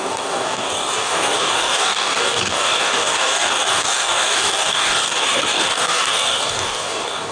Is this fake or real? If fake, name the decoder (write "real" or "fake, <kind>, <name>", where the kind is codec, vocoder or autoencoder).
fake, codec, DAC